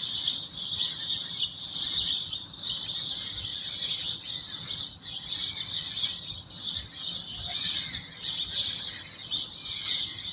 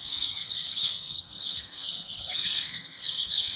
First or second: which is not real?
second